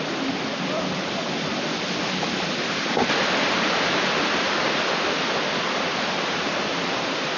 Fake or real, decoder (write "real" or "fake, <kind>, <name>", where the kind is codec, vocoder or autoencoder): real